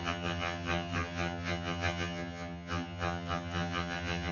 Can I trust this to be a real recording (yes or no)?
no